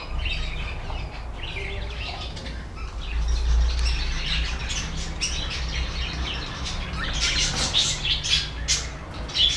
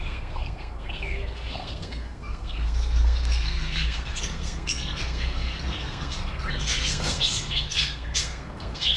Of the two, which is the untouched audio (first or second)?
first